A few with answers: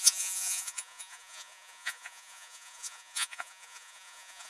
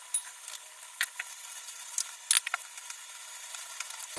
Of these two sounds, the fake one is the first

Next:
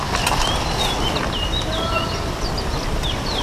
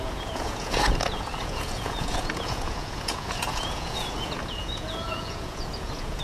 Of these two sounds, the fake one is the second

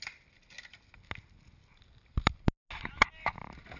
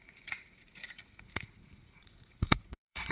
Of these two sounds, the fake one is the second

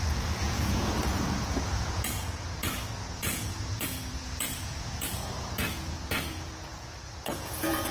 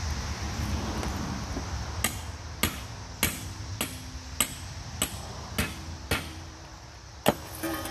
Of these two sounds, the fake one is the first